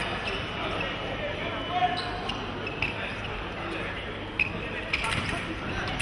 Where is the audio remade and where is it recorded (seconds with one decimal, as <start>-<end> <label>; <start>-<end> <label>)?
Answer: 0.0-6.0 recorded